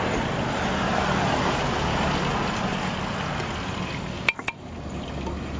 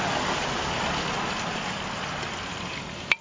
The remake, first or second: second